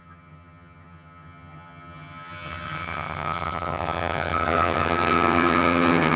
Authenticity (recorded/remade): remade